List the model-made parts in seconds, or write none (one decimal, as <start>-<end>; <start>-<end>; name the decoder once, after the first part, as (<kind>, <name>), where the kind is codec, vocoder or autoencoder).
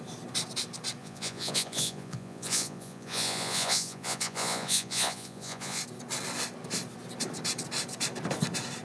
1.0-5.8 (vocoder, Vocos)